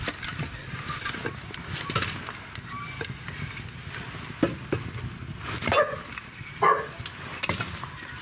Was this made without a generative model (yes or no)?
yes